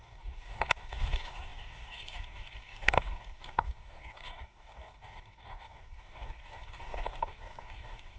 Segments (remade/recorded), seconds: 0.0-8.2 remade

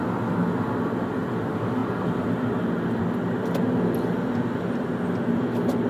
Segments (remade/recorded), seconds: 0.0-5.9 recorded

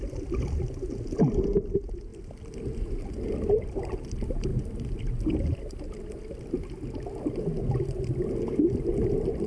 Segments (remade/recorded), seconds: 0.0-9.5 recorded